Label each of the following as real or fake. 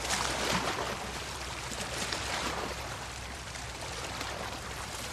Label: real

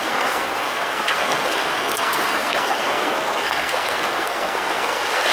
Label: fake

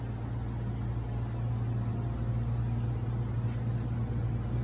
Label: real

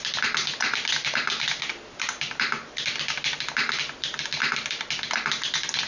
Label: real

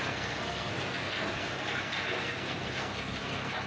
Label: fake